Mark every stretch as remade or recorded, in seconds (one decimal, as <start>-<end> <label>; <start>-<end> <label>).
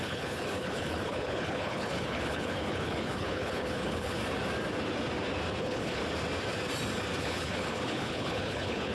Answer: 0.0-4.2 remade; 4.2-5.6 recorded; 5.6-6.0 remade; 6.0-7.2 recorded; 7.2-8.9 remade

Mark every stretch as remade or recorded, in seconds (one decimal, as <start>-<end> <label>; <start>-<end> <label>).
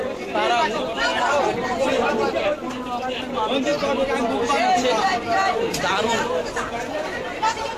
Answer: 0.0-7.8 recorded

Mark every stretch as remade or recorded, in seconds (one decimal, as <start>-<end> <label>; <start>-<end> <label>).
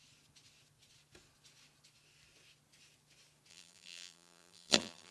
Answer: 0.0-3.5 recorded; 3.5-5.1 remade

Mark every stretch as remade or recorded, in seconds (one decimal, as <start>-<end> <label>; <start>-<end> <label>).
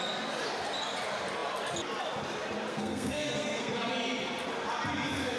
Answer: 0.0-2.7 recorded; 2.7-3.9 remade; 3.9-5.4 recorded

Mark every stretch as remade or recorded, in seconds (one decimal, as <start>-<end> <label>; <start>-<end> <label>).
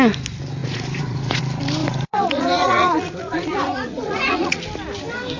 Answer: 0.0-0.6 recorded; 0.6-1.4 remade; 1.4-1.8 recorded; 1.8-4.6 remade; 4.6-5.4 recorded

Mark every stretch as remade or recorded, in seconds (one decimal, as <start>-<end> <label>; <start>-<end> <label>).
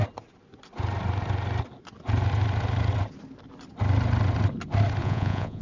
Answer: 0.0-5.0 recorded; 5.0-5.6 remade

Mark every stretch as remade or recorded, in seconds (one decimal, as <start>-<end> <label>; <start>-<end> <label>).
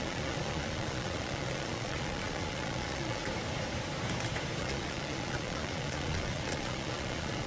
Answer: 0.0-3.2 remade; 3.2-4.6 recorded; 4.6-7.5 remade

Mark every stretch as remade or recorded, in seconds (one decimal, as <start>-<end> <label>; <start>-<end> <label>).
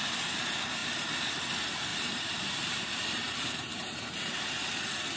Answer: 0.0-1.9 recorded; 1.9-4.8 remade; 4.8-5.2 recorded